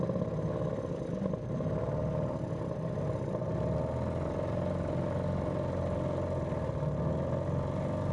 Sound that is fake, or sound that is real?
real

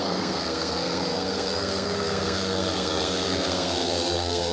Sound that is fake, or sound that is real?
fake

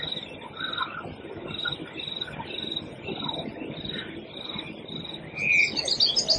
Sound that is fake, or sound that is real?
real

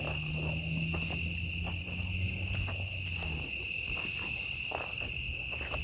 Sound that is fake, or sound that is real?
real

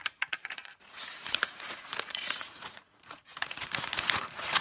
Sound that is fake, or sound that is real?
fake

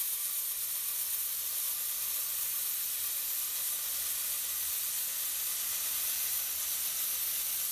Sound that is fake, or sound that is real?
real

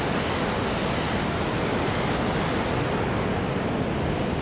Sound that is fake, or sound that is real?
real